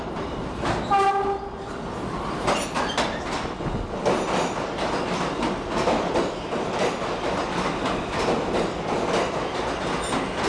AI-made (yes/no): no